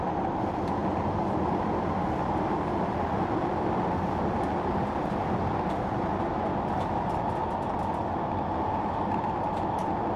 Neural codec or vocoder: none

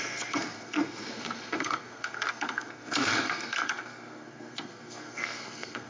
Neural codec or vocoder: codec, SNAC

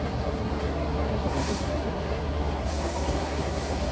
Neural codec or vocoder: codec, SNAC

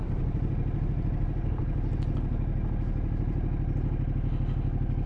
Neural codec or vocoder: none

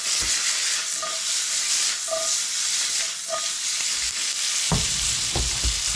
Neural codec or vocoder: none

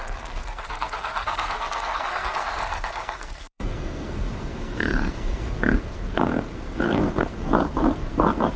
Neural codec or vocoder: codec, SNAC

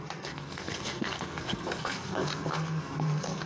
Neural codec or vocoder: codec, SNAC